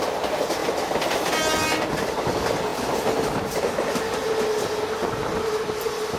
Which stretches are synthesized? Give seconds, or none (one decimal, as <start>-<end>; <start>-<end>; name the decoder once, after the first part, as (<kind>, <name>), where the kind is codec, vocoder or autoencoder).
none